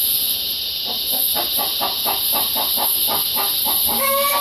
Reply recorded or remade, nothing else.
recorded